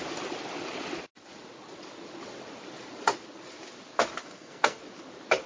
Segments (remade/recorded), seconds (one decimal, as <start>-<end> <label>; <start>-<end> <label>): 0.0-4.2 recorded; 4.2-4.8 remade; 4.8-5.5 recorded